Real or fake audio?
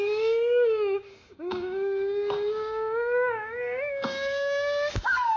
fake